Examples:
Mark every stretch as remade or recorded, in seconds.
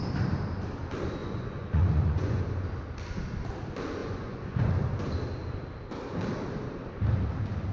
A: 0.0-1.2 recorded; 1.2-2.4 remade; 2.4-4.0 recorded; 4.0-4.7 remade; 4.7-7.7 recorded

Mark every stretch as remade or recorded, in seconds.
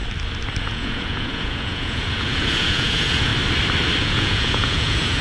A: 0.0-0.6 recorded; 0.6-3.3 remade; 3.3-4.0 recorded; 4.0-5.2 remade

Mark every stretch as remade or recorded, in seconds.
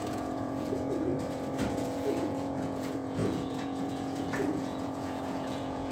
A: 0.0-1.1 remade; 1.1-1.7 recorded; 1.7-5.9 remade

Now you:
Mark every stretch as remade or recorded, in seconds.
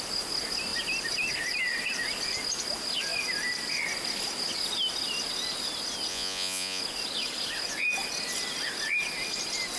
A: 0.0-6.1 recorded; 6.1-6.8 remade; 6.8-9.8 recorded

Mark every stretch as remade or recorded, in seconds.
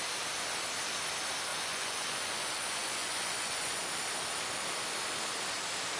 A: 0.0-1.5 recorded; 1.5-3.8 remade; 3.8-6.0 recorded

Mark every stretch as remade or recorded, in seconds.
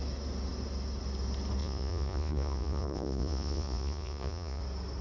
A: 0.0-1.6 recorded; 1.6-4.6 remade; 4.6-5.0 recorded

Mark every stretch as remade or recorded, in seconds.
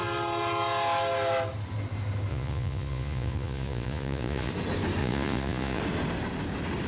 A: 0.0-2.3 recorded; 2.3-4.5 remade; 4.5-5.0 recorded; 5.0-5.8 remade; 5.8-6.9 recorded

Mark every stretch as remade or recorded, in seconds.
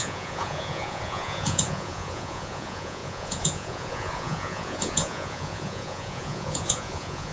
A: 0.0-7.3 remade